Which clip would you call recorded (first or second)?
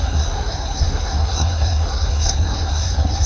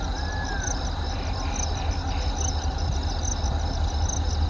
second